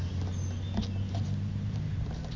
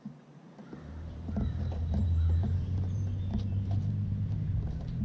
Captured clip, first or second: first